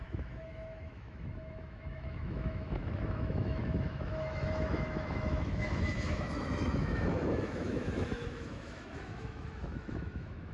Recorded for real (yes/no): no